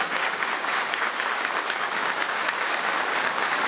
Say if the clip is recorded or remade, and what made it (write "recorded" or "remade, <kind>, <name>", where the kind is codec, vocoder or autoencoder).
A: remade, codec, DAC